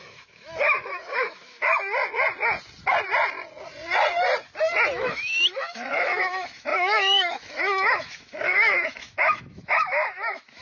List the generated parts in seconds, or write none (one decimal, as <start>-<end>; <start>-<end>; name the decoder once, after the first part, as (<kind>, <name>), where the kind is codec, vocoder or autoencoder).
0.0-1.7 (autoencoder, DAC-VAE); 4.9-10.6